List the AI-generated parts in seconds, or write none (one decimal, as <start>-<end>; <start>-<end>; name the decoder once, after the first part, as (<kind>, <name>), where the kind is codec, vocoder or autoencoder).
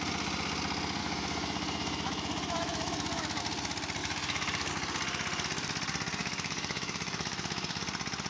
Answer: 1.0-3.4 (autoencoder, DAC-VAE); 4.0-4.7; 6.2-7.8